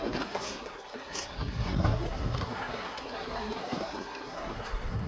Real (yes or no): no